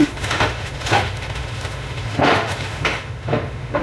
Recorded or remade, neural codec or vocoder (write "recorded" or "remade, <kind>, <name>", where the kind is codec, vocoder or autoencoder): remade, autoencoder, DAC-VAE